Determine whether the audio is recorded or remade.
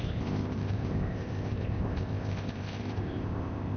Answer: remade